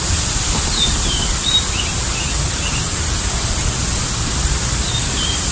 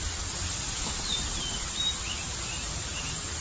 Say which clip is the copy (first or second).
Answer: second